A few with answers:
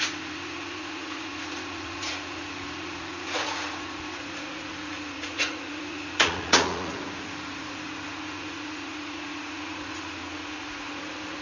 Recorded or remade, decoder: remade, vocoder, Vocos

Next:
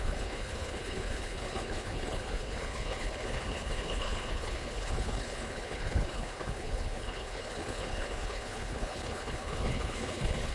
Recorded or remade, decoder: remade, codec, HILCodec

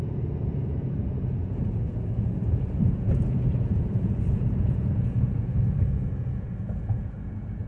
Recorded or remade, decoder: remade, vocoder, Vocos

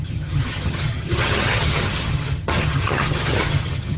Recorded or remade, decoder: remade, vocoder, HiFi-GAN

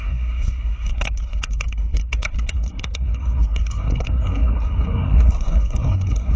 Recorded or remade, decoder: remade, codec, SNAC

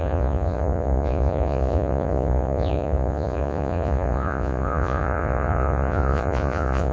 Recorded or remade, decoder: remade, vocoder, Vocos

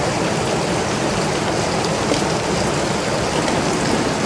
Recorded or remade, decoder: recorded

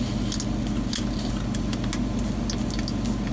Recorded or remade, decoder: recorded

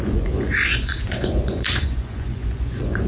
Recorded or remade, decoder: remade, vocoder, Vocos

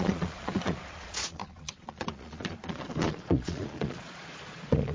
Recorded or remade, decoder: remade, vocoder, Vocos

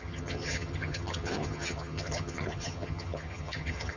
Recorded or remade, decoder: remade, vocoder, HiFi-GAN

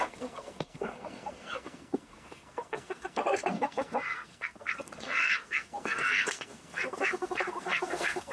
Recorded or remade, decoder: remade, codec, SNAC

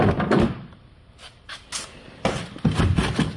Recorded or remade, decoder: recorded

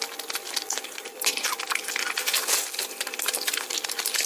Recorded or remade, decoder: recorded